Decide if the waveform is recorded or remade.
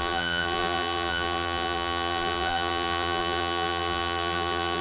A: remade